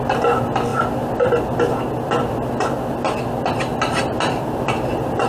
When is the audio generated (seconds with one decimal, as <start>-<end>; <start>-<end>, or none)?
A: none